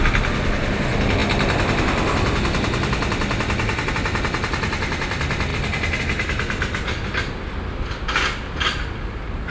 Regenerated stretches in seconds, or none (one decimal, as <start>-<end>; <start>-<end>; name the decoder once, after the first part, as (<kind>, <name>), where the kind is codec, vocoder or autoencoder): none